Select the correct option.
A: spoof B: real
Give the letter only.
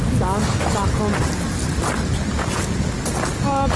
B